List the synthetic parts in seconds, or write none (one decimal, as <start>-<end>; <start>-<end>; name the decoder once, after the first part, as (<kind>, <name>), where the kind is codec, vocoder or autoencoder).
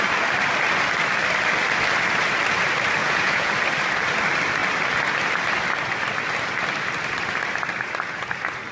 3.0-3.5 (vocoder, Vocos)